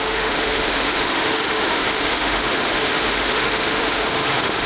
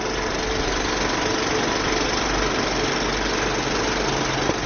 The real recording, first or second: second